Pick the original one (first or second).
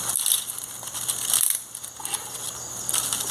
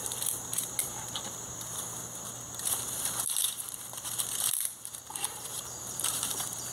first